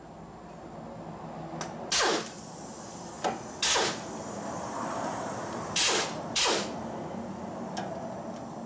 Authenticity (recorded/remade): recorded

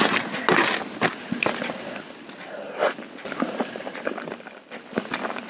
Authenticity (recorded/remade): recorded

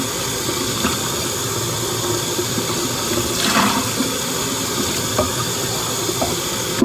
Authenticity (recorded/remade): recorded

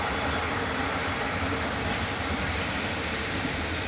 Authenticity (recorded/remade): recorded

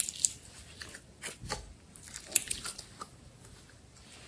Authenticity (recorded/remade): recorded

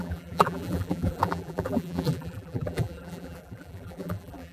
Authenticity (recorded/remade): remade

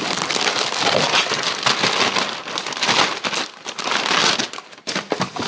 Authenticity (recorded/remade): recorded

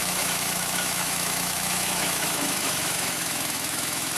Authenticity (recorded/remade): remade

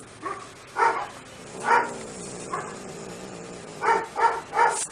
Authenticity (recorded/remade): recorded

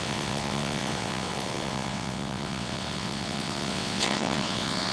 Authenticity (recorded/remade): remade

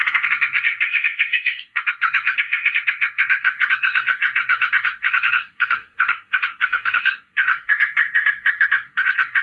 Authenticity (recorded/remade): remade